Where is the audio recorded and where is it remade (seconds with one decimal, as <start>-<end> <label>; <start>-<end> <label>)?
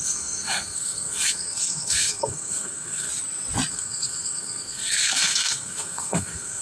0.0-3.1 remade; 3.1-3.7 recorded; 3.7-6.6 remade